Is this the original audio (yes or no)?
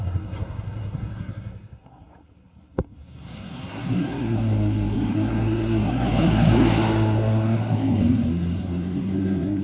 no